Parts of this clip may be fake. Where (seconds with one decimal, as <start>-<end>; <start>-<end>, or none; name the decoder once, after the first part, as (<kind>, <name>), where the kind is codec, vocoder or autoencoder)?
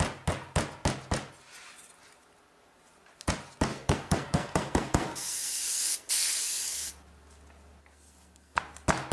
3.7-6.9 (codec, SNAC); 7.8-8.6